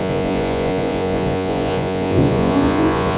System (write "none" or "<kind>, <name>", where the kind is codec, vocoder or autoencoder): vocoder, Vocos